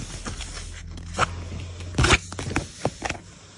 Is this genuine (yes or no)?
yes